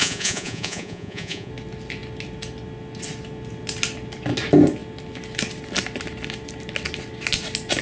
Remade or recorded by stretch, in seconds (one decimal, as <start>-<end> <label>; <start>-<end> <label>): 0.0-1.5 remade; 1.5-7.8 recorded